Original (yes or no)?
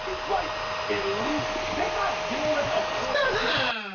yes